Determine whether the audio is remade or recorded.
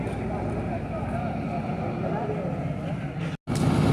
recorded